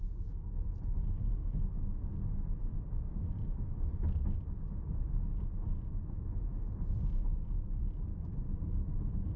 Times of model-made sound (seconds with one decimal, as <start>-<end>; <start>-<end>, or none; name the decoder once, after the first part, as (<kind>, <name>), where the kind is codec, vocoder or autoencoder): 2.7-7.1 (vocoder, BigVGAN v2); 7.8-9.4